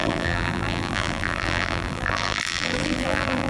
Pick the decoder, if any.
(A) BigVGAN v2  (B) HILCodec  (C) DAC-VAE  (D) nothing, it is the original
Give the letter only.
A